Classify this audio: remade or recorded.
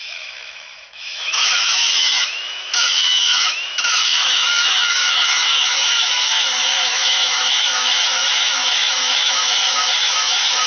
remade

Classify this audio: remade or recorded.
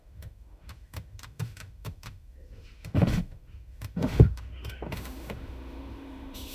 remade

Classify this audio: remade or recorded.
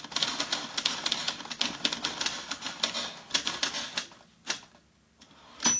recorded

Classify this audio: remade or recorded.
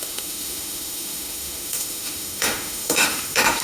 remade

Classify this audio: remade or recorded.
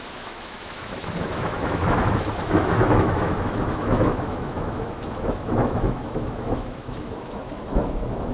remade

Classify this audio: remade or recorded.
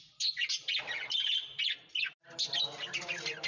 recorded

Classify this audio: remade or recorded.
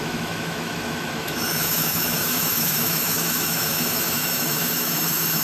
remade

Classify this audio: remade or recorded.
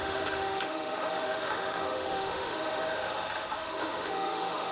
remade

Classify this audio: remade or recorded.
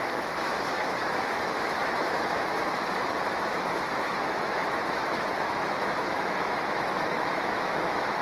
remade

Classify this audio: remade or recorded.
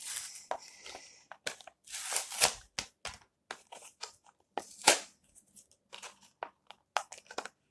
recorded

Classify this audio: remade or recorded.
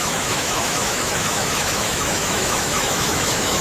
remade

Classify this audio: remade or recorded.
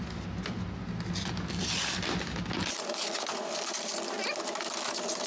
recorded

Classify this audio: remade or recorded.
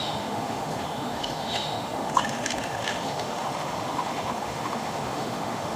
remade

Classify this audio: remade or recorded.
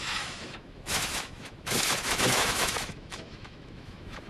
remade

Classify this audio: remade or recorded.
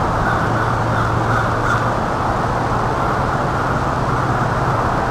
recorded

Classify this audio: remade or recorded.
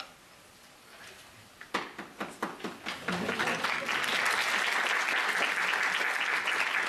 recorded